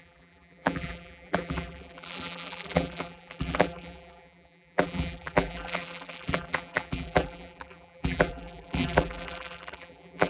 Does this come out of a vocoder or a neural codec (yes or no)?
yes